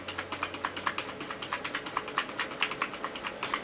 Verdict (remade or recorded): recorded